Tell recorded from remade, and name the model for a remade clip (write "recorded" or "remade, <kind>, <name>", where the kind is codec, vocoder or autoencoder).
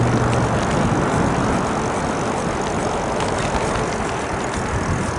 recorded